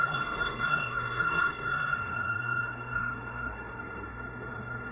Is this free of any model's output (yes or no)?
no